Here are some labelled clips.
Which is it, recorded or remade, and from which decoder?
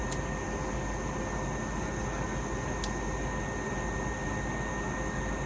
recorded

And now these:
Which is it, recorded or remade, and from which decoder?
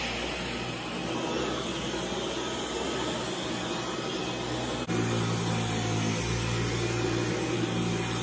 recorded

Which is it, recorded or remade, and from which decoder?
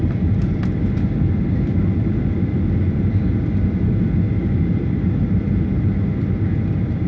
recorded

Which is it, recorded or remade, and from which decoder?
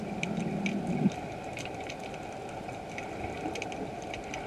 recorded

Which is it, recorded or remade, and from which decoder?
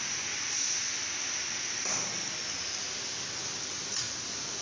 recorded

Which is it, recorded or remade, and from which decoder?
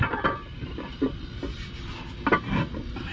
remade, vocoder, BigVGAN v2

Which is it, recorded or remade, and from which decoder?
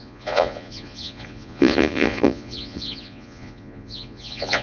remade, vocoder, Vocos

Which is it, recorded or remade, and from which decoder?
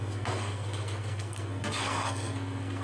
remade, codec, SNAC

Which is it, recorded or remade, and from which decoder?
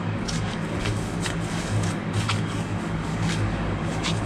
remade, codec, DAC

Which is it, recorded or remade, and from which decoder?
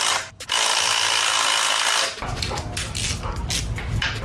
recorded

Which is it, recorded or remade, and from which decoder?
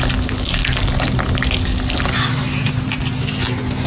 recorded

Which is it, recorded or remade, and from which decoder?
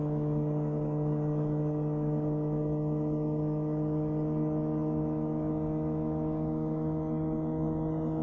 remade, codec, DAC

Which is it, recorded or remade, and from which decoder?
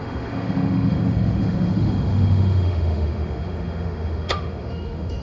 remade, autoencoder, DAC-VAE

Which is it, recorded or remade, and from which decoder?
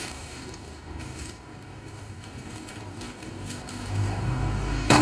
remade, codec, DAC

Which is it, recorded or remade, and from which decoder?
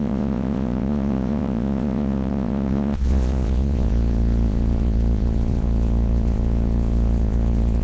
remade, vocoder, Vocos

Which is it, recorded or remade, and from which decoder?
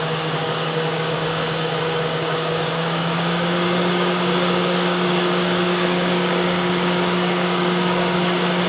remade, codec, DAC